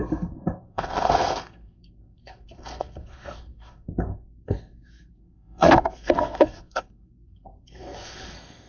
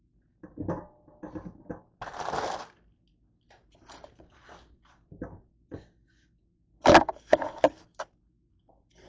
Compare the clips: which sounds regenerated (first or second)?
first